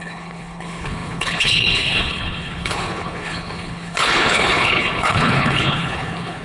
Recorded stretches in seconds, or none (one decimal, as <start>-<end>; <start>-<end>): none